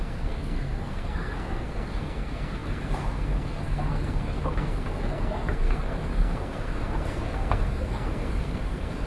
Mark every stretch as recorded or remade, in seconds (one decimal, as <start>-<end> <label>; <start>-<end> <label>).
0.0-9.1 remade